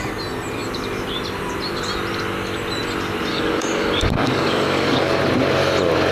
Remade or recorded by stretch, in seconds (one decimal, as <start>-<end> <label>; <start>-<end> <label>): 0.0-3.3 recorded; 3.3-5.2 remade; 5.2-6.1 recorded